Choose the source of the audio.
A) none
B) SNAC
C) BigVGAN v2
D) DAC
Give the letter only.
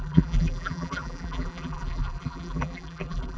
C